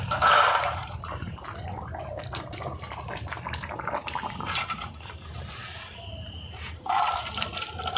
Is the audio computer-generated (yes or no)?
yes